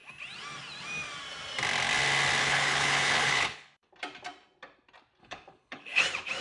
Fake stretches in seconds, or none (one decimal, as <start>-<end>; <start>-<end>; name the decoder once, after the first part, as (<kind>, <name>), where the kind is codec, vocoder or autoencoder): 2.4-3.9 (codec, HILCodec); 5.2-6.0